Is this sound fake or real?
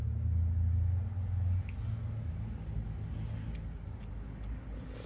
real